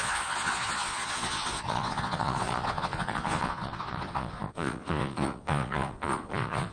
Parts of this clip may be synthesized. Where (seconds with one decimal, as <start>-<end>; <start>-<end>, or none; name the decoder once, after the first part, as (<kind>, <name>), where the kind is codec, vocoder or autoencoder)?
0.0-6.7 (vocoder, Vocos)